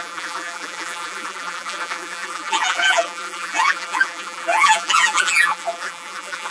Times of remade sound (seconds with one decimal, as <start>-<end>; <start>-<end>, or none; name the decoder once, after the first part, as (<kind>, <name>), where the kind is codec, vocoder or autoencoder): 0.0-6.5 (vocoder, BigVGAN v2)